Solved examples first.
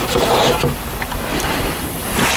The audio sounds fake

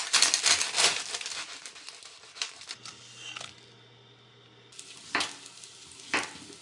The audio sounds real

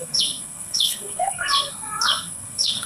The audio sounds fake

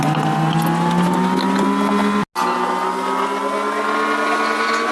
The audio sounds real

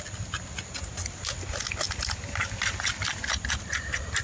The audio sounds real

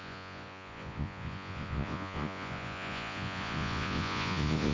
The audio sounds fake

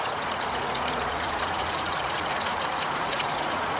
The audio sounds fake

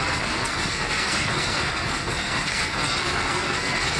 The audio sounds fake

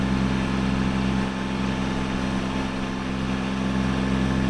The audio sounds real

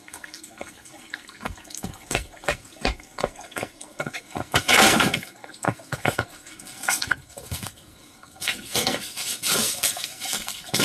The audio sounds fake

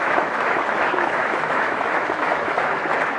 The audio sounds fake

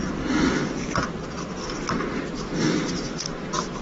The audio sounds real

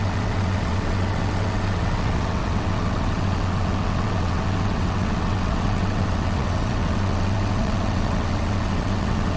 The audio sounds fake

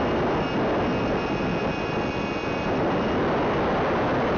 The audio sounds real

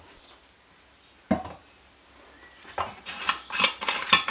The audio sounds real